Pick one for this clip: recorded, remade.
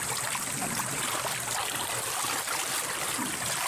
recorded